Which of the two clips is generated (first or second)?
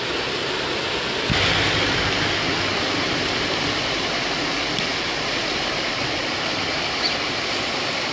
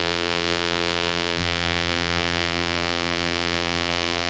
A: second